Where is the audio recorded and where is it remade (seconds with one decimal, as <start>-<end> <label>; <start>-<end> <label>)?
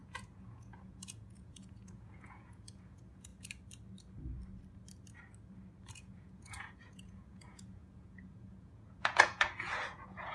0.0-3.3 remade; 3.3-5.9 recorded; 5.9-10.3 remade